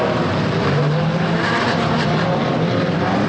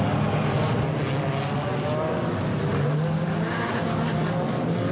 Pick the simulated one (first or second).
first